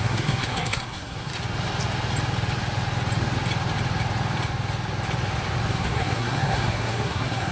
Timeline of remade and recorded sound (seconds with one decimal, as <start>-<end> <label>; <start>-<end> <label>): 0.0-1.3 remade; 1.3-5.8 recorded; 5.8-7.5 remade